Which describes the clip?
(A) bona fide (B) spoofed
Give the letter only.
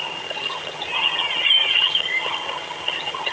B